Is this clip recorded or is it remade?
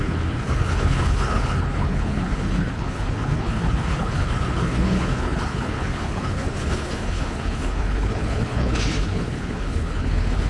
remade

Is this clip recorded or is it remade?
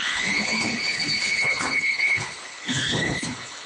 remade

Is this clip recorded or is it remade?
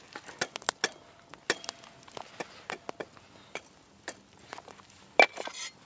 recorded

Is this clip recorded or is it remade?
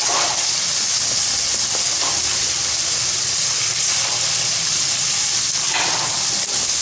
recorded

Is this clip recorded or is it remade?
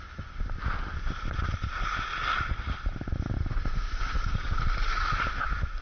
recorded